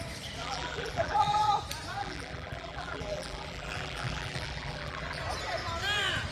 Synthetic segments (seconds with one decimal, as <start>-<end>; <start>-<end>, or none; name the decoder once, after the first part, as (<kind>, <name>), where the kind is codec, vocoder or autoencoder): 0.4-1.5 (vocoder, BigVGAN v2); 2.0-5.2